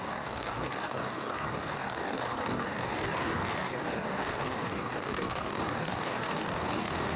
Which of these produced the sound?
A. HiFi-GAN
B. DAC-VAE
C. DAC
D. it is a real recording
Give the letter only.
C